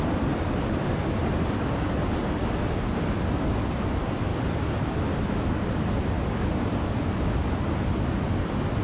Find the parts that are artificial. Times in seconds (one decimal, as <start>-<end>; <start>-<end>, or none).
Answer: 1.2-3.7; 4.3-5.6